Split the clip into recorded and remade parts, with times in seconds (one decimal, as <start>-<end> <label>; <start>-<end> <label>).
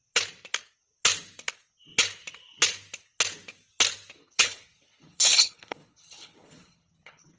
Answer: 0.0-4.2 recorded; 4.2-7.4 remade